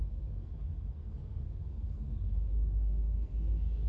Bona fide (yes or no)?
no